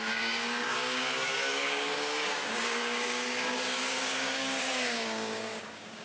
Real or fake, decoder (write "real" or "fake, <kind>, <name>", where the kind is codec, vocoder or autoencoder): fake, codec, DAC